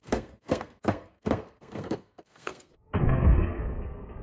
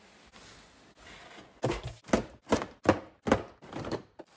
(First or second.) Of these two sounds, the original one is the second